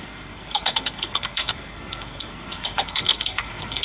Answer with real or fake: fake